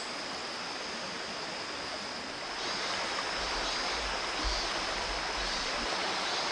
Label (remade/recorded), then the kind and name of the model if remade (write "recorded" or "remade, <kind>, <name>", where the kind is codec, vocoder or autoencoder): recorded